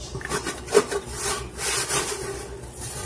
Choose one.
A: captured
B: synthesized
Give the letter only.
A